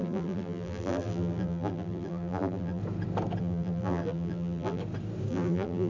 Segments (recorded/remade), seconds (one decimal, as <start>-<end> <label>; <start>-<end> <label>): 0.0-2.8 remade; 2.8-3.4 recorded; 3.4-4.8 remade; 4.8-5.3 recorded; 5.3-5.9 remade